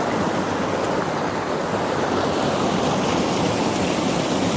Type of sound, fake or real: real